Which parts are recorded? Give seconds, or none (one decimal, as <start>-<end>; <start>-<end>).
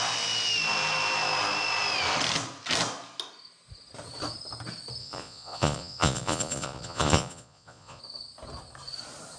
0.0-5.0; 8.0-9.4